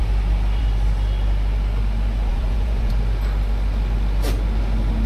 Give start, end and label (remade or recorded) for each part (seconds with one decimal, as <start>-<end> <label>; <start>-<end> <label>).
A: 0.0-2.3 recorded; 2.3-2.9 remade; 2.9-5.1 recorded